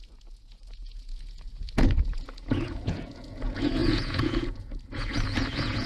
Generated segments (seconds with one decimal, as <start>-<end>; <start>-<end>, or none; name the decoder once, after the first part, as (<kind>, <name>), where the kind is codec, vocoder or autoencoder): 0.0-5.9 (vocoder, Vocos)

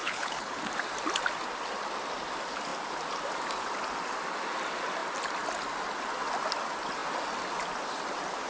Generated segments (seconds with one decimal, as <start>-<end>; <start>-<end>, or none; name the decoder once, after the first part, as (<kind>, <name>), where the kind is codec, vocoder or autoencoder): 0.0-0.6 (codec, HILCodec)

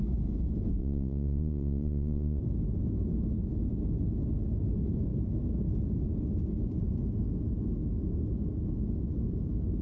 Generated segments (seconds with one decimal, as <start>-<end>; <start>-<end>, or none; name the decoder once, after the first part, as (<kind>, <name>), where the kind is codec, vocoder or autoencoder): 0.8-2.4 (vocoder, Vocos)

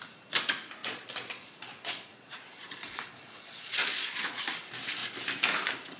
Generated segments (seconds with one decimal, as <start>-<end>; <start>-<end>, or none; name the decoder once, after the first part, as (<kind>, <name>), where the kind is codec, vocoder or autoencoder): 0.8-4.4 (vocoder, Vocos)

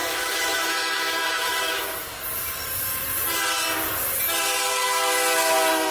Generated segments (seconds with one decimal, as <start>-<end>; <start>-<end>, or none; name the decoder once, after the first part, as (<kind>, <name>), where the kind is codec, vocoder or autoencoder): 0.0-2.2 (autoencoder, DAC-VAE)

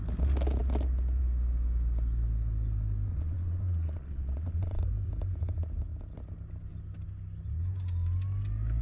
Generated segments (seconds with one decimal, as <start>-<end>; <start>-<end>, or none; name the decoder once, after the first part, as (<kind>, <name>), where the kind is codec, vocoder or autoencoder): 3.1-4.8 (vocoder, Vocos)

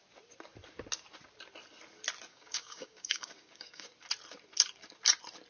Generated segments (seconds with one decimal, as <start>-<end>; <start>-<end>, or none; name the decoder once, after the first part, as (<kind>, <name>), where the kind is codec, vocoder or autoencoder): 2.3-3.9 (codec, DAC)

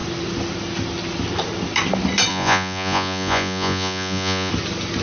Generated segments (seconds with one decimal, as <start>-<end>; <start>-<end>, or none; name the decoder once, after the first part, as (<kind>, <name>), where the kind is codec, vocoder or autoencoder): 2.3-4.5 (vocoder, Vocos)